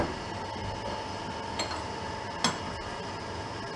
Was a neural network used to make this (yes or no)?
no